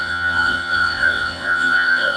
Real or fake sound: fake